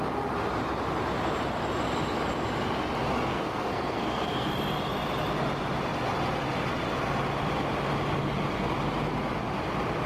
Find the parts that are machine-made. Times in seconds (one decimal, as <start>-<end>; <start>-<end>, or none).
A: 3.3-4.5